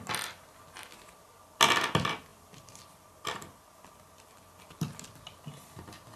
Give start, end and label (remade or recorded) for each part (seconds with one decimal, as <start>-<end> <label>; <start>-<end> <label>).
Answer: 0.0-6.2 recorded